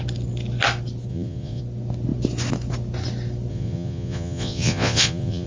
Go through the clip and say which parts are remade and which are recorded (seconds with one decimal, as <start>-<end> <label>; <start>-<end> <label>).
0.0-1.1 recorded; 1.1-1.6 remade; 1.6-3.5 recorded; 3.5-5.5 remade